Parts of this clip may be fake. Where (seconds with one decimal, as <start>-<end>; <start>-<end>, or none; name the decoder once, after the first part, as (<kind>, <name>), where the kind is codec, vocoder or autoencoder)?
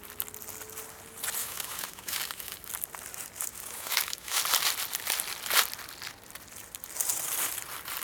1.4-2.7 (autoencoder, DAC-VAE); 3.5-4.4